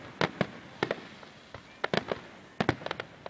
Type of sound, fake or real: real